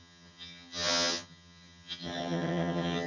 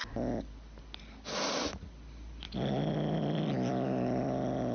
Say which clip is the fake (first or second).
first